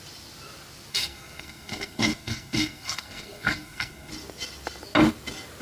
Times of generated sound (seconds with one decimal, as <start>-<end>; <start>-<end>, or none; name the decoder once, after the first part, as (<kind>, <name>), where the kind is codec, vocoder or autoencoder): 0.9-4.1 (codec, SNAC)